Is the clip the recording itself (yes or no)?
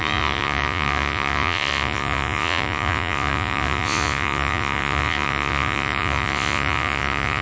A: no